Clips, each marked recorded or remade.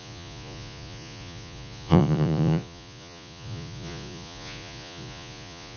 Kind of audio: remade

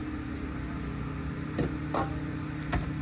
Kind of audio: recorded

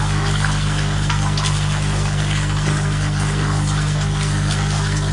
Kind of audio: remade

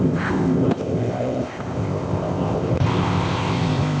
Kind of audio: remade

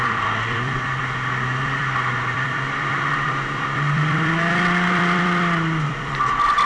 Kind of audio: remade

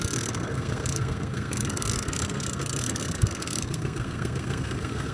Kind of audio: remade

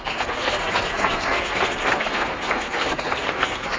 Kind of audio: remade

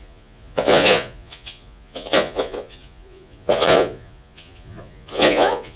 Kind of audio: remade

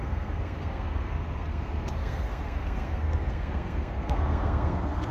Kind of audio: remade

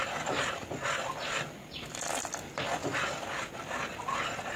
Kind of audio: recorded